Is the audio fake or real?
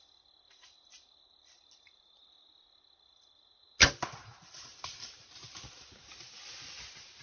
real